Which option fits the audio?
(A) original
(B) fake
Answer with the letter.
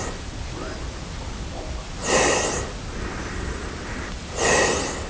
A